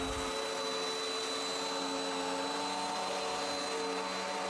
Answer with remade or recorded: recorded